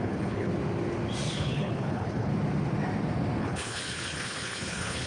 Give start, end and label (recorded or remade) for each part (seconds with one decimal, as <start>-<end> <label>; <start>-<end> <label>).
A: 0.0-0.5 remade; 0.5-1.3 recorded; 1.3-2.3 remade; 2.3-3.4 recorded; 3.4-5.1 remade